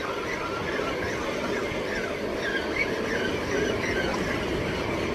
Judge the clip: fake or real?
real